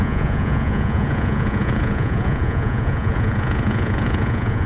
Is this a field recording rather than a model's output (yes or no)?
no